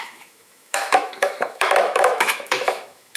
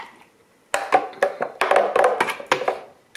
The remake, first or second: first